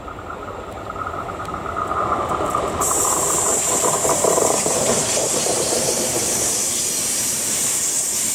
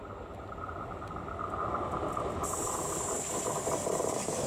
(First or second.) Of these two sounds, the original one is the second